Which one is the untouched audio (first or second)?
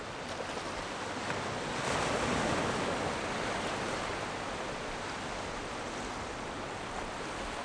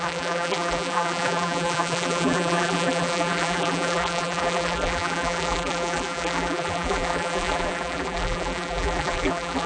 first